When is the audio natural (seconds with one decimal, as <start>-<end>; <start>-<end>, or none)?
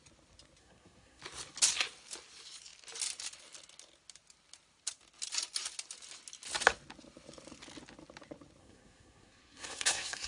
0.0-0.6; 1.2-8.6